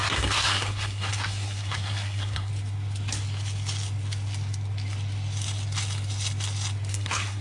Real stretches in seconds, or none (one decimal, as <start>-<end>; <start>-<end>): 2.5-6.9